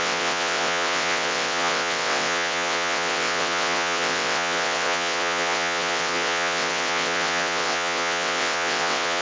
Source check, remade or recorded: remade